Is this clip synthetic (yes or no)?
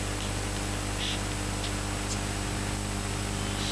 no